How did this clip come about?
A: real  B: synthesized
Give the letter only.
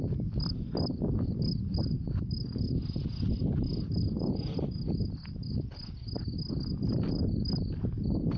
A